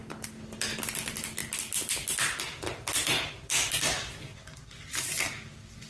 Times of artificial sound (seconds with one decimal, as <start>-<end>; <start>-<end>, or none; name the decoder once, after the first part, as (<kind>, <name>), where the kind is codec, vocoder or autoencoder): none